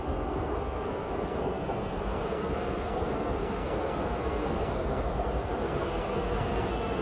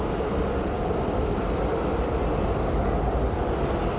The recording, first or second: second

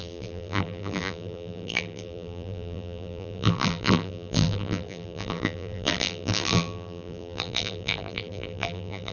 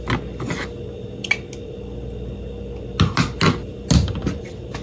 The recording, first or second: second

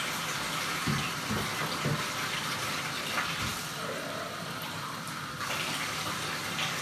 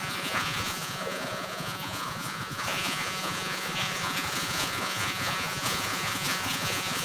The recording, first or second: first